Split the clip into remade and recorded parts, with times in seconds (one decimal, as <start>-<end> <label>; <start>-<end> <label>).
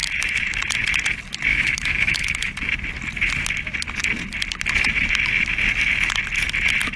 0.0-1.5 recorded; 1.5-2.5 remade; 2.5-7.0 recorded